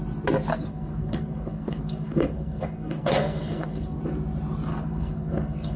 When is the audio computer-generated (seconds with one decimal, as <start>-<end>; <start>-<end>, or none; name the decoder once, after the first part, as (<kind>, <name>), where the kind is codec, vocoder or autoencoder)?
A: 0.5-4.0 (codec, SNAC); 4.7-5.8